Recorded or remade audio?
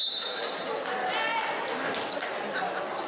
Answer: recorded